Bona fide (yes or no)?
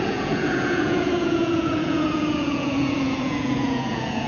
no